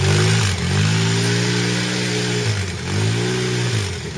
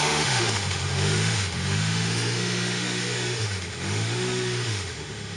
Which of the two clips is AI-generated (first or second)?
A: second